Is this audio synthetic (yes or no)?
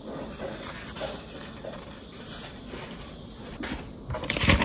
no